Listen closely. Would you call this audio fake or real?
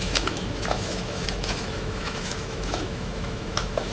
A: fake